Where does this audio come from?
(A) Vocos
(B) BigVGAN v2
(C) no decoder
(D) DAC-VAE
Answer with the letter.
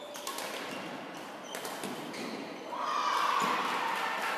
C